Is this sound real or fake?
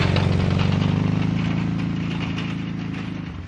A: real